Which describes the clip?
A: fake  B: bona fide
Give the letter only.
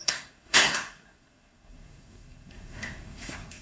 A